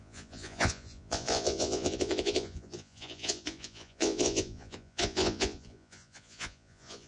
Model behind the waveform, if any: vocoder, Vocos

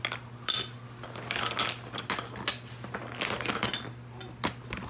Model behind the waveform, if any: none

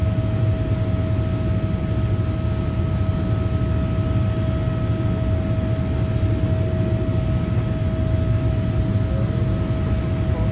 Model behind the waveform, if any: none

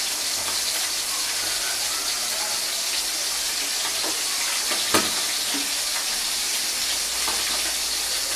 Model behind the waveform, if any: none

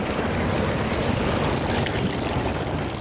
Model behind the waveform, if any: none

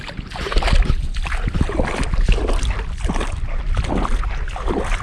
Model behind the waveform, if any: none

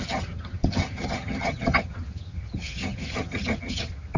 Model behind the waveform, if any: vocoder, HiFi-GAN